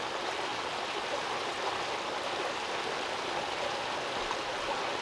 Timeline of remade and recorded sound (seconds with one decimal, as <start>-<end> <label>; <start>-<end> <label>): 0.0-5.0 recorded